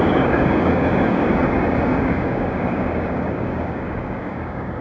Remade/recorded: remade